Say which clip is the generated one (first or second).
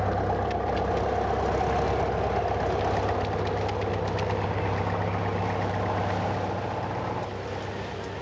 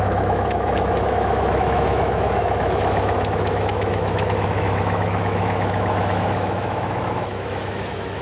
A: second